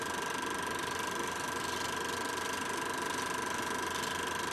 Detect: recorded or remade recorded